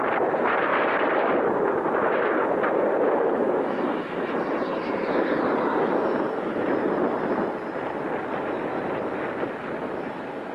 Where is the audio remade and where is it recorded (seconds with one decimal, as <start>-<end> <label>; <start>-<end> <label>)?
0.0-10.5 recorded

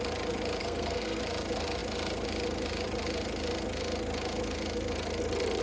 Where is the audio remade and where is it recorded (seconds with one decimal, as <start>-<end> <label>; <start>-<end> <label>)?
0.0-0.6 recorded; 0.6-1.2 remade; 1.2-5.6 recorded

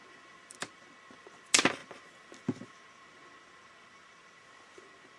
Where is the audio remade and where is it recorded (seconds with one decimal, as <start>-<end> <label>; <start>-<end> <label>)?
0.0-5.2 recorded

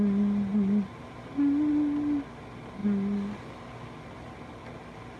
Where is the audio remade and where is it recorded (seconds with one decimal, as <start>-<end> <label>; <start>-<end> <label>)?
0.0-5.2 recorded